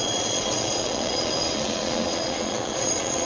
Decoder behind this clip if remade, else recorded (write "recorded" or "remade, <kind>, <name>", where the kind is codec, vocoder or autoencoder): remade, vocoder, Vocos